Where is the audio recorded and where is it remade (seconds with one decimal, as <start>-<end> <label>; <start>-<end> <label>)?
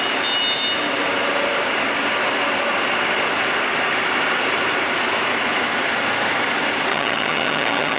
0.0-6.9 recorded; 6.9-8.0 remade